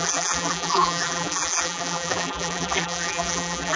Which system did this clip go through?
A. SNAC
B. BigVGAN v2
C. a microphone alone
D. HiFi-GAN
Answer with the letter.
B